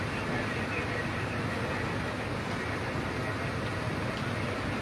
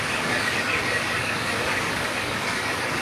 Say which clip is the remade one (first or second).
second